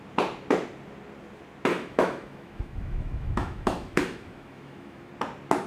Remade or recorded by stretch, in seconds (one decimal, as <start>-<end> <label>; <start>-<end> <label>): 0.0-1.7 recorded; 1.7-5.1 remade; 5.1-5.7 recorded